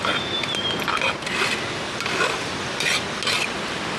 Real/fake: real